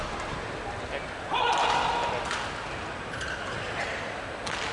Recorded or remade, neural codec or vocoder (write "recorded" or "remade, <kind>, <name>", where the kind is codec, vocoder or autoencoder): recorded